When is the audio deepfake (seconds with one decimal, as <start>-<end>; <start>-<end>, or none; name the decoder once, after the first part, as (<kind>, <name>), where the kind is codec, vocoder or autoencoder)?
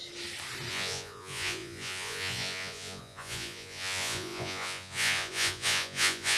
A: 0.7-6.4 (vocoder, Vocos)